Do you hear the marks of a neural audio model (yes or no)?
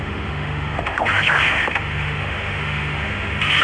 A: yes